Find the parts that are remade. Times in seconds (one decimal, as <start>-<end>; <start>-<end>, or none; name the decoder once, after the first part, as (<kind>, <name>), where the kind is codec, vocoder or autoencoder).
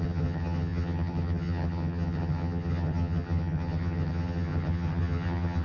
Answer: 0.0-5.6 (vocoder, HiFi-GAN)